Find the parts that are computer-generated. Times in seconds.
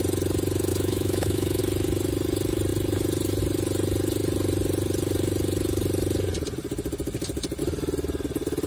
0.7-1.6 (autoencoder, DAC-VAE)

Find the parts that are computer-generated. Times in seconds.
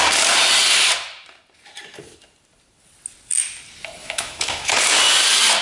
4.0-4.8 (autoencoder, DAC-VAE)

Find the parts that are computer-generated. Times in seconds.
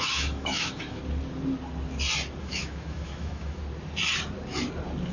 0.0-1.0 (autoencoder, DAC-VAE); 2.4-3.6